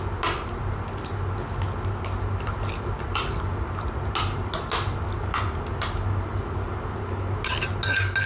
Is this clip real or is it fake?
real